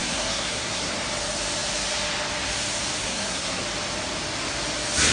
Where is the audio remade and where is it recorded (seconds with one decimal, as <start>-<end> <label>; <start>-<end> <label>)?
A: 0.0-0.9 remade; 0.9-3.0 recorded; 3.0-3.6 remade; 3.6-5.1 recorded